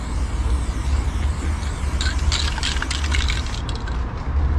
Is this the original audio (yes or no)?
yes